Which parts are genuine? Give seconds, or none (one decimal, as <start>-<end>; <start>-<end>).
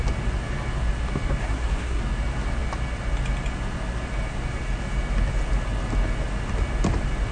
0.0-1.4; 2.0-7.3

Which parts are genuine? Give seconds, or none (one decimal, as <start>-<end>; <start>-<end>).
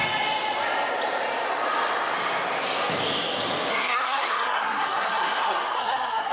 0.0-3.7